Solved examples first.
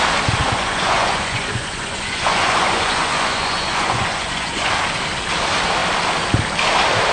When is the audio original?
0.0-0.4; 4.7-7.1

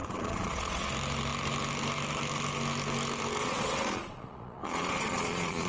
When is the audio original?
0.9-3.4

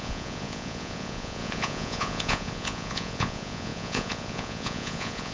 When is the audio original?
none